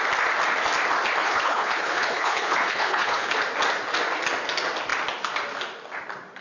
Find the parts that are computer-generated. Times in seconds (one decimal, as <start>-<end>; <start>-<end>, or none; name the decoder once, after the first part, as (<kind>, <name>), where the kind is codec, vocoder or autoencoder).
1.2-3.3 (codec, HILCodec)